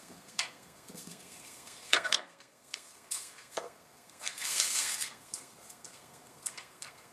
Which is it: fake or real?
fake